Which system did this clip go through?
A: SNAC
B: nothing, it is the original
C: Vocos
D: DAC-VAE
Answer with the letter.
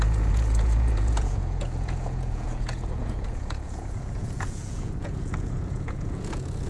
C